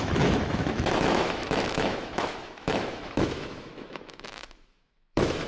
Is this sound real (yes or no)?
no